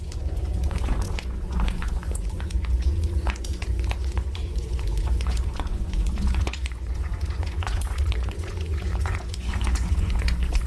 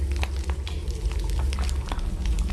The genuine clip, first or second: second